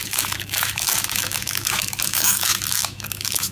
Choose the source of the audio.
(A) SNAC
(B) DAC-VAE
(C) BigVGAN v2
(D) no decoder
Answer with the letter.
B